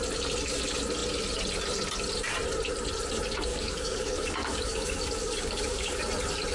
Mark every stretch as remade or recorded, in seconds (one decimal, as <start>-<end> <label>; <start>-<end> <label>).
0.0-3.5 recorded; 3.5-6.0 remade; 6.0-6.5 recorded